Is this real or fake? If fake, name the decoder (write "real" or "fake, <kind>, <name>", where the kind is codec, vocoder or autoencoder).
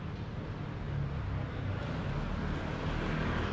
real